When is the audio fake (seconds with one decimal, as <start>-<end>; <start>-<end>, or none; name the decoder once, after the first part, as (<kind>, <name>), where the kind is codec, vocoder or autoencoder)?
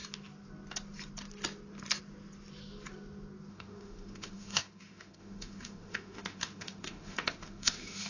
3.5-8.1 (autoencoder, DAC-VAE)